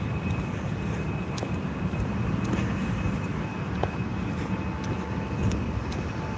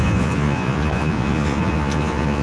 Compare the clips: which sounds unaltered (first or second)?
first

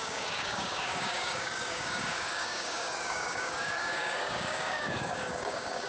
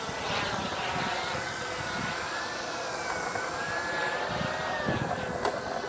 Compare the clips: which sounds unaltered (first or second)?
second